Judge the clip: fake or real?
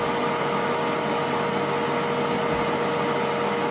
real